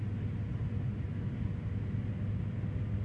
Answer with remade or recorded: recorded